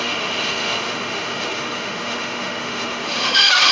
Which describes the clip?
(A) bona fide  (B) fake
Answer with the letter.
B